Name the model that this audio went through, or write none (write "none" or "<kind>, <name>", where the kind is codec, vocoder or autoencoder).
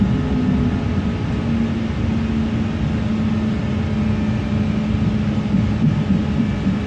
none